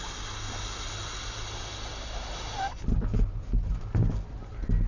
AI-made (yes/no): no